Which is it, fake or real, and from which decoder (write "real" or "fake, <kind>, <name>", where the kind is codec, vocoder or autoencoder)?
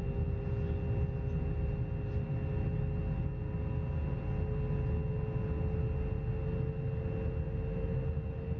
real